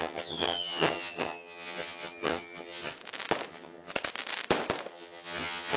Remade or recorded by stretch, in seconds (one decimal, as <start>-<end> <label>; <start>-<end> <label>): 0.0-2.9 remade; 2.9-3.5 recorded; 3.5-3.9 remade; 3.9-4.9 recorded; 4.9-5.8 remade